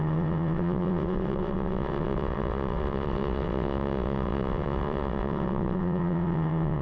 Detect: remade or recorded remade